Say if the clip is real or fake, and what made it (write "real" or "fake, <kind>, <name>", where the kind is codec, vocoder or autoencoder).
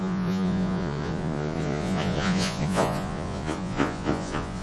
fake, vocoder, Vocos